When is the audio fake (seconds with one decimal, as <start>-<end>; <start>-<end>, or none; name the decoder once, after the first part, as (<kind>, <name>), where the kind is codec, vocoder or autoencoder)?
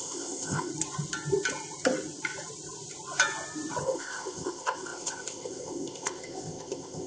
0.0-0.7 (codec, ZipCodec); 3.8-7.1